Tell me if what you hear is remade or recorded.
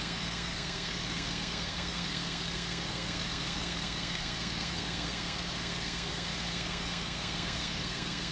remade